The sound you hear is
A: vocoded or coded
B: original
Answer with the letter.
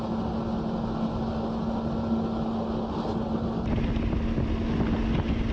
B